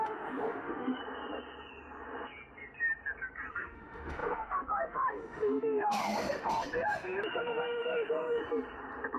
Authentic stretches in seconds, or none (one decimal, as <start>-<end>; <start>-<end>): 1.0-3.5; 8.4-9.2